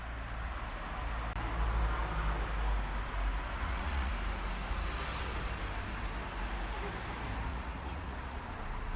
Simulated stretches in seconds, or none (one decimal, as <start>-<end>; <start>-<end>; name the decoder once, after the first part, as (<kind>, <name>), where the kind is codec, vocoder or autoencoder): 3.6-4.1 (vocoder, Vocos); 7.5-8.4